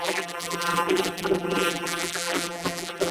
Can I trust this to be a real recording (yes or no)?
no